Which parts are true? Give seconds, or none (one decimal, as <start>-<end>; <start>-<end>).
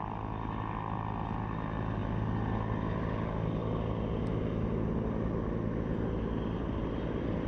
0.0-7.5